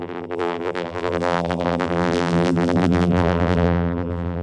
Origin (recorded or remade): remade